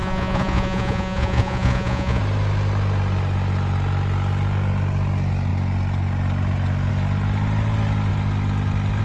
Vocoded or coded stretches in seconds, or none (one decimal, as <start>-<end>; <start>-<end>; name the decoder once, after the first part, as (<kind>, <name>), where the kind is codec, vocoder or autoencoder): 0.0-2.2 (vocoder, Vocos)